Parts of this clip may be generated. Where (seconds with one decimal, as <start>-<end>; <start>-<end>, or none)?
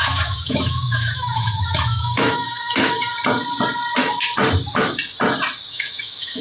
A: 0.0-3.1; 5.7-6.4